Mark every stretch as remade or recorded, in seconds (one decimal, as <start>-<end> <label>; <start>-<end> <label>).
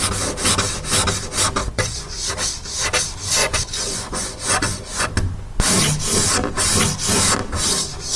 0.0-1.6 recorded; 1.6-2.3 remade; 2.3-3.4 recorded; 3.4-5.1 remade; 5.1-8.2 recorded